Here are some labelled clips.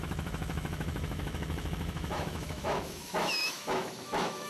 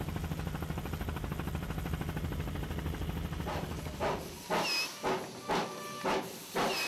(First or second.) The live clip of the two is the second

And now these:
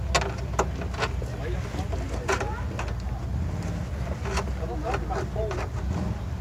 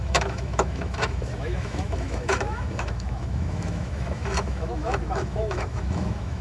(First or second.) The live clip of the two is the first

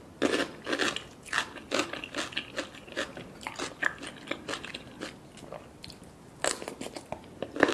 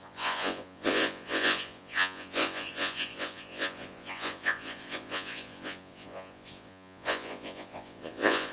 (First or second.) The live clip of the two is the first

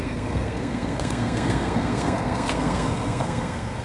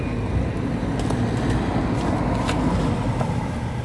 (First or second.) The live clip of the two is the second